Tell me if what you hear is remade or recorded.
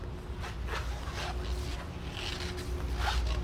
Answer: recorded